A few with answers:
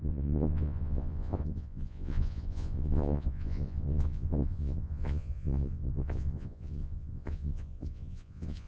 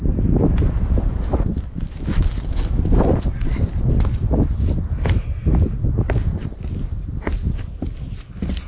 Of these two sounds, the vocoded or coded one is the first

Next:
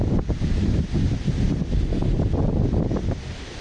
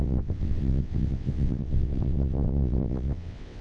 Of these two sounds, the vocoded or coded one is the second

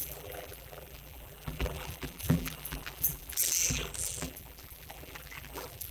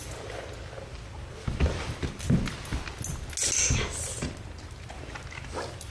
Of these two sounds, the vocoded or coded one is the first